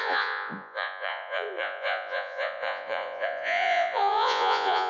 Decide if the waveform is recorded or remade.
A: remade